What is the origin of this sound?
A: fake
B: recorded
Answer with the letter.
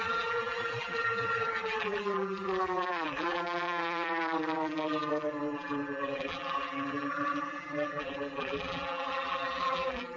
A